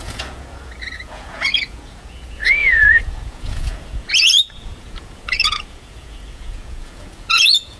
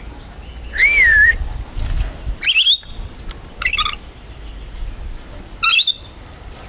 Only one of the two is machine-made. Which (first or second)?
first